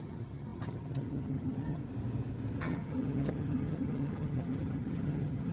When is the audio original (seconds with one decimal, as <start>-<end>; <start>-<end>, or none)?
1.8-2.6